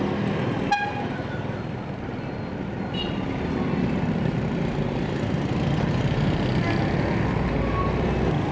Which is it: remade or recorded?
recorded